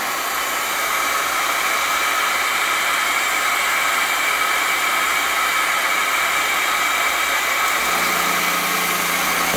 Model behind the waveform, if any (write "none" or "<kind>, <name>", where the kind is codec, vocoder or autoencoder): none